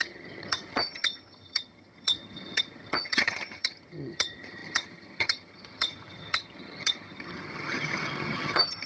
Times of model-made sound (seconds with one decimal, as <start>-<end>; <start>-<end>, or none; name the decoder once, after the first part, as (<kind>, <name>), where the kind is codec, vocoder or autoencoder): 0.0-8.9 (vocoder, HiFi-GAN)